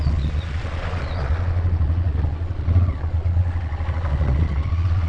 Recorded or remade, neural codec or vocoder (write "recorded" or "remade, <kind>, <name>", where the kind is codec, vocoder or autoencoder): remade, vocoder, Vocos